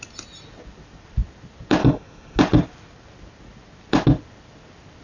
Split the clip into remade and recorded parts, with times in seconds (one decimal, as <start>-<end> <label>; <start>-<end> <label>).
0.0-1.8 recorded; 1.8-2.4 remade; 2.4-5.0 recorded